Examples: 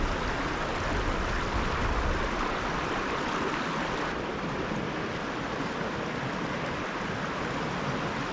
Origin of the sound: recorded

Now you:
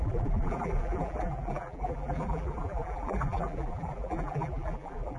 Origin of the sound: remade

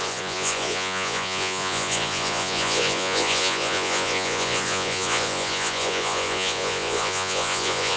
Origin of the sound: remade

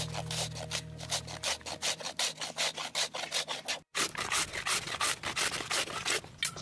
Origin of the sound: recorded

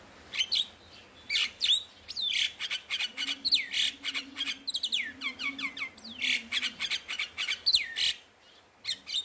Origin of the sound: recorded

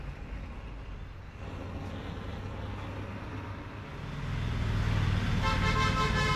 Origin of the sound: recorded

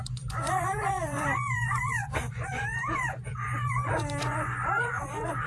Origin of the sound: remade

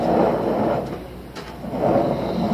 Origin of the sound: recorded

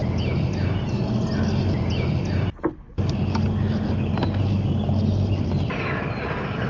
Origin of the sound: recorded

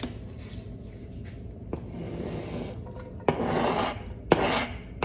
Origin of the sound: recorded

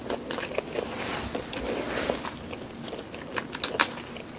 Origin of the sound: recorded